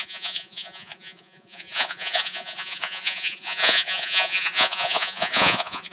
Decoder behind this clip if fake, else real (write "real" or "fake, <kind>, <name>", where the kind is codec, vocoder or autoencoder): fake, vocoder, Vocos